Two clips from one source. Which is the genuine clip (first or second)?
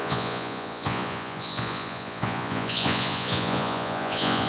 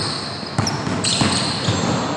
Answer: second